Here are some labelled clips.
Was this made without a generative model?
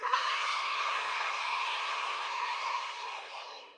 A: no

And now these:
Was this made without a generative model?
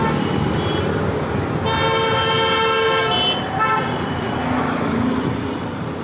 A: yes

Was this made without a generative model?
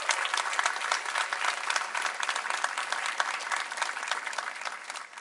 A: yes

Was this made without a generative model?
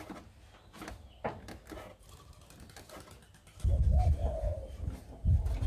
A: yes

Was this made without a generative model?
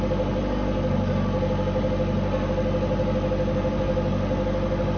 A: yes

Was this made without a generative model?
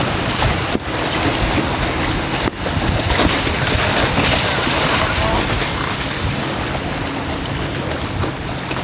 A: yes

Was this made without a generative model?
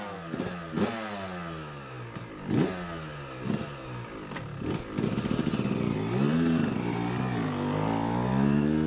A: yes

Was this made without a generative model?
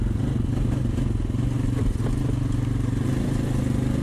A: yes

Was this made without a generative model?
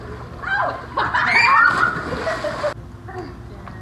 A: yes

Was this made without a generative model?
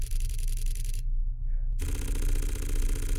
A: yes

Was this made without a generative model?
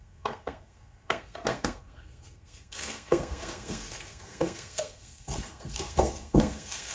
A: no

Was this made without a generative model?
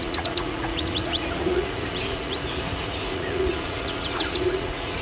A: no